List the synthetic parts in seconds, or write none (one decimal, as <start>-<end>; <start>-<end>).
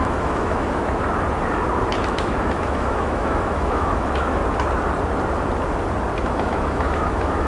0.0-0.8; 1.9-4.4; 6.2-7.5